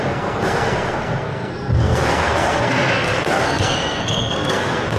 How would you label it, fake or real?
fake